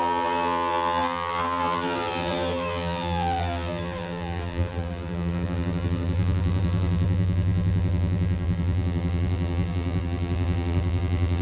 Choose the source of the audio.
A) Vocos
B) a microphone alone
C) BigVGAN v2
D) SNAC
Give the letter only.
C